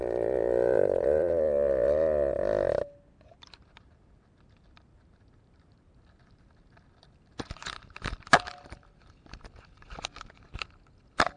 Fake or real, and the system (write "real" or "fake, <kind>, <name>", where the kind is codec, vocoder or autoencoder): real